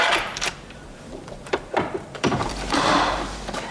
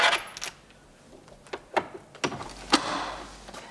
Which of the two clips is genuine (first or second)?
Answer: second